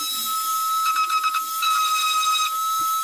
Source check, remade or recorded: recorded